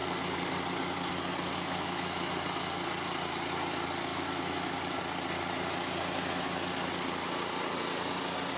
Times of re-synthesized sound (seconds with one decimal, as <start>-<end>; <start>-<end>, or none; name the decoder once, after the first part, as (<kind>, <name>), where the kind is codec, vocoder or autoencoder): 1.5-2.3 (autoencoder, DAC-VAE); 4.1-4.7